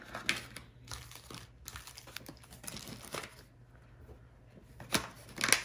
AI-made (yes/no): no